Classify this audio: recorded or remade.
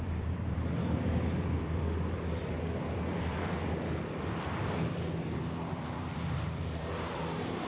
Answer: remade